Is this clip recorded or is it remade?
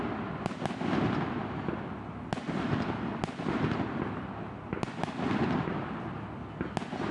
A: recorded